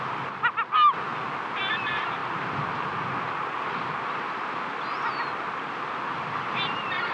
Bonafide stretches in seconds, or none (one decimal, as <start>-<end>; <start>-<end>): 0.0-7.1